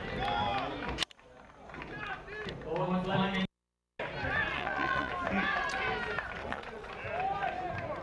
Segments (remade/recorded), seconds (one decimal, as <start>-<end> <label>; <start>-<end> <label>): 0.0-4.5 recorded; 4.5-5.1 remade; 5.1-6.4 recorded; 6.4-6.9 remade; 6.9-8.0 recorded